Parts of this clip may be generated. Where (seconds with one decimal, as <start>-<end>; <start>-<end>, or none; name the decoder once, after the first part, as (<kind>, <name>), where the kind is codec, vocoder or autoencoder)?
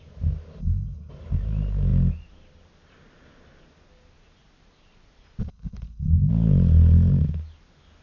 0.6-1.1 (codec, HILCodec); 5.4-6.3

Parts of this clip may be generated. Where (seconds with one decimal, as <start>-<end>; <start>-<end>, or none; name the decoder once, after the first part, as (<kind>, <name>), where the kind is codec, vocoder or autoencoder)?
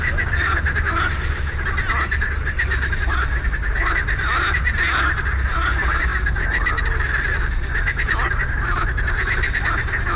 none